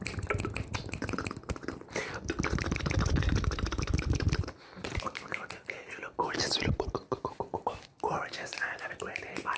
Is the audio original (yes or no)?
no